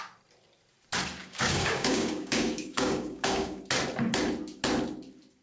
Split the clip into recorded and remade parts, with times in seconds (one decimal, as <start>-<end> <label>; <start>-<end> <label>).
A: 0.0-1.2 recorded; 1.2-3.6 remade; 3.6-5.4 recorded